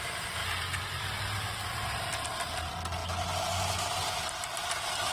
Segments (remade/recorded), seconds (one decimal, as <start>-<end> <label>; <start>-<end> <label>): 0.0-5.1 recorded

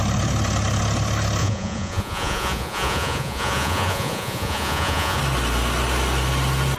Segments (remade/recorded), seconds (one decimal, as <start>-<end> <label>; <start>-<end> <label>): 0.0-1.4 recorded; 1.4-5.2 remade; 5.2-6.8 recorded

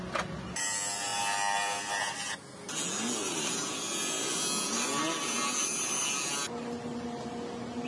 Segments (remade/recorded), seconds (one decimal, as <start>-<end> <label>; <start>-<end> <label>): 0.0-7.9 recorded

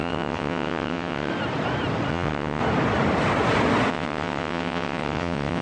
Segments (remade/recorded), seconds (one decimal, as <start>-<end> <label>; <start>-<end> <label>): 0.0-1.3 remade; 1.3-2.1 recorded; 2.1-2.6 remade; 2.6-3.9 recorded; 3.9-5.6 remade

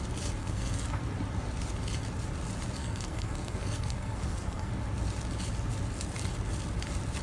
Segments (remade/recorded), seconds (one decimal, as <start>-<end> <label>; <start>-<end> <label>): 0.0-0.4 recorded; 0.4-1.0 remade; 1.0-2.8 recorded; 2.8-4.7 remade; 4.7-7.2 recorded

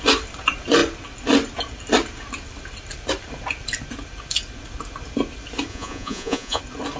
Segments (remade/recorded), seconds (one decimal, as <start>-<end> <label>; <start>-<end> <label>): 0.0-5.7 recorded; 5.7-6.6 remade; 6.6-7.0 recorded

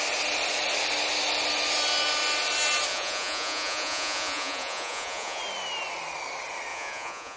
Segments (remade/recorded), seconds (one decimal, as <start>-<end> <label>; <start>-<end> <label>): 0.0-2.9 recorded; 2.9-5.4 remade; 5.4-6.7 recorded; 6.7-7.4 remade